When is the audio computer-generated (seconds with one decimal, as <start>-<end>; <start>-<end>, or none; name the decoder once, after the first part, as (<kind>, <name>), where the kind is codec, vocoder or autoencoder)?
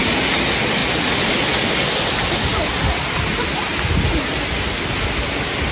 none